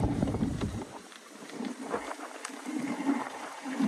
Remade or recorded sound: remade